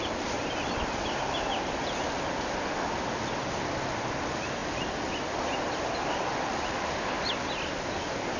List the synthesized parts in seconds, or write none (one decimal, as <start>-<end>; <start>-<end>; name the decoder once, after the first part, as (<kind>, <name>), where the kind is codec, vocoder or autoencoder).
none